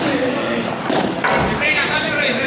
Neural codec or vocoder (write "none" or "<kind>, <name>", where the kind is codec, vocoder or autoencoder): none